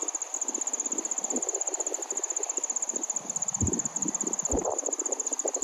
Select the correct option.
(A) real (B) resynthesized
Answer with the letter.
A